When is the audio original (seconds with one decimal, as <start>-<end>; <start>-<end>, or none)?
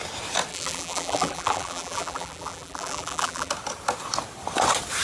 0.0-0.5; 3.5-5.0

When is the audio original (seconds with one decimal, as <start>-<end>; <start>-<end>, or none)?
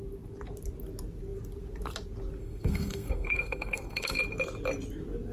0.0-2.4; 4.2-5.3